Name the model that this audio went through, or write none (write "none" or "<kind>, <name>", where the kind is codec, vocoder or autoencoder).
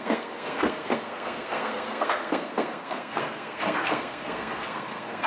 codec, SNAC